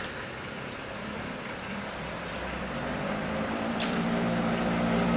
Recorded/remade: remade